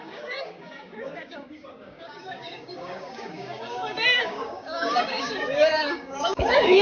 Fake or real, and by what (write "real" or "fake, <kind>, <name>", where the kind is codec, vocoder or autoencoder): fake, codec, DAC